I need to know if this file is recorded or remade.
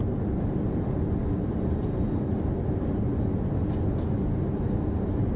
recorded